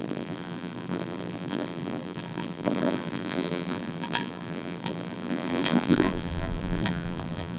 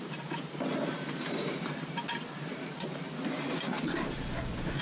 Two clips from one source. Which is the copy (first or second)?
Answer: first